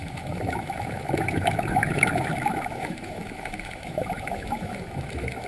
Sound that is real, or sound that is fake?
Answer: fake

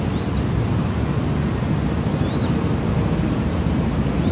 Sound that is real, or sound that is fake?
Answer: real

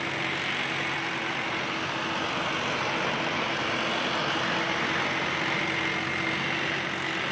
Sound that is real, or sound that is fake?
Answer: real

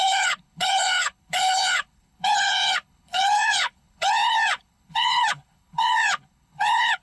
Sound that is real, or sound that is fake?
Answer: fake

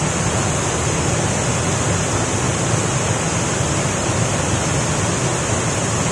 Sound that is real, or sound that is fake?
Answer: real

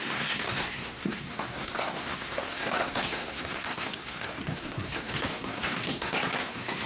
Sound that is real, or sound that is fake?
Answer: fake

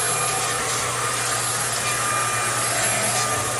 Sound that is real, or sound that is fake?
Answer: real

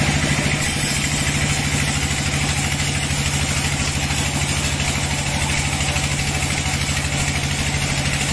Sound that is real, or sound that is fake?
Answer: real